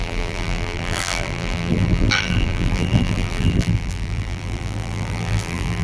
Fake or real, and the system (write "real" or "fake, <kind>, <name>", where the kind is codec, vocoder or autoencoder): fake, vocoder, BigVGAN v2